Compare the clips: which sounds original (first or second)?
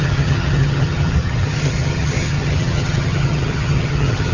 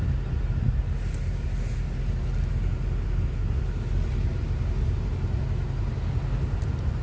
second